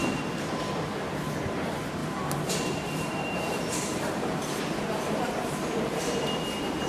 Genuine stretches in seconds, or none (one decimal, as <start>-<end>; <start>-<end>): 0.7-2.0; 4.6-6.9